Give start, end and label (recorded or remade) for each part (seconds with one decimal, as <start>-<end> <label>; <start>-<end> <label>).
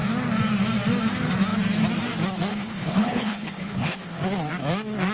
0.0-2.5 recorded; 2.5-4.2 remade; 4.2-5.1 recorded